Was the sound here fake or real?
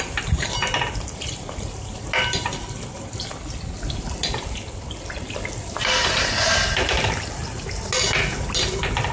real